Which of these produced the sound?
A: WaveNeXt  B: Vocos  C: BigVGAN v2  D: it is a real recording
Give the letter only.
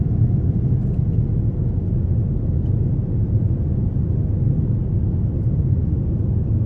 D